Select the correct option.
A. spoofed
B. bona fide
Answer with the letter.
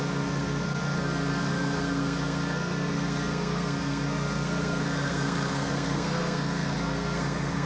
A